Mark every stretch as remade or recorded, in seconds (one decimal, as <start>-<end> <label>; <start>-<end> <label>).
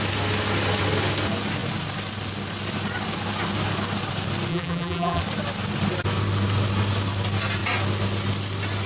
0.0-4.5 recorded; 4.5-5.2 remade; 5.2-8.9 recorded